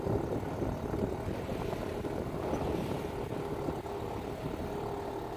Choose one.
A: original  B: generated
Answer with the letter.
A